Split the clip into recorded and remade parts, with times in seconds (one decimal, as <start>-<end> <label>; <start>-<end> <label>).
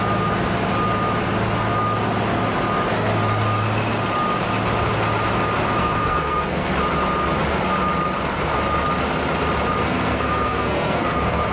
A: 0.0-5.8 recorded; 5.8-6.7 remade; 6.7-9.8 recorded; 9.8-11.5 remade